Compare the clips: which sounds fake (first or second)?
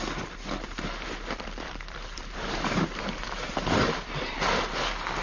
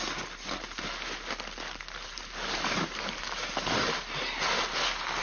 first